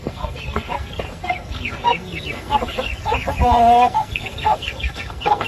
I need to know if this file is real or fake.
fake